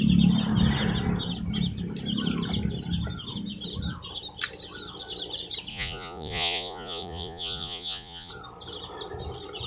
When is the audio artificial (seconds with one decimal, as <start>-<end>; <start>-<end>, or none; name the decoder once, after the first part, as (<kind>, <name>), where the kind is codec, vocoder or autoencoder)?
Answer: 5.7-8.3 (vocoder, Vocos)